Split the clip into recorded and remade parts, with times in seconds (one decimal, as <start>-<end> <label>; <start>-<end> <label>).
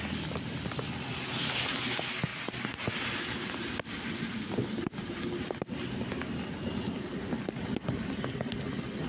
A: 0.0-9.1 recorded